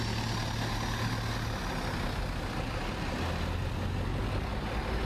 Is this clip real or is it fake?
real